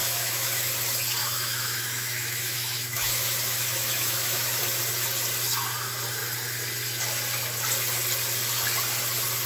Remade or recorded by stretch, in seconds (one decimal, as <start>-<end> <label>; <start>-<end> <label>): 0.0-0.7 remade; 0.7-1.2 recorded; 1.2-4.6 remade; 4.6-9.5 recorded